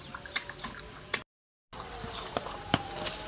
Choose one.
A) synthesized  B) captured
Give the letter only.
B